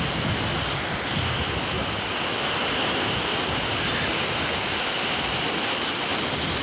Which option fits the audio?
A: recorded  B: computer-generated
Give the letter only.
A